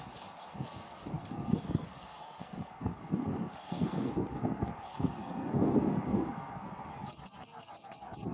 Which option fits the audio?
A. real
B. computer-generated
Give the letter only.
B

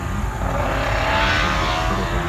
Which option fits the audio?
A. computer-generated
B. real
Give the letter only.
B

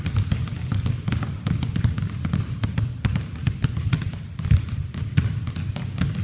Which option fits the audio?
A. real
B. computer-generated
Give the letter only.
A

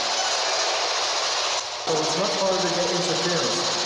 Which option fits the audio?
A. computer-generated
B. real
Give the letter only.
B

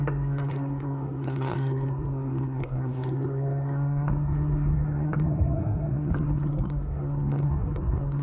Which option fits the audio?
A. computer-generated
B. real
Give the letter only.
A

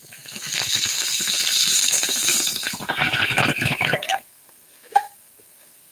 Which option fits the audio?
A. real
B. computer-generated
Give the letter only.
B